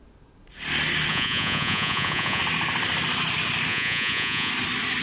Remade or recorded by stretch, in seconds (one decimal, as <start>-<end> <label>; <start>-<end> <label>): 0.0-1.1 recorded; 1.1-2.4 remade; 2.4-3.7 recorded; 3.7-4.5 remade; 4.5-5.0 recorded